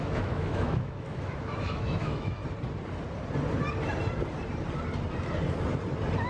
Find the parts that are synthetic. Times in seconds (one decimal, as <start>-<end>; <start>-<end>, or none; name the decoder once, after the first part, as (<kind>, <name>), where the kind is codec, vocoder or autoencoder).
0.0-2.4 (autoencoder, DAC-VAE)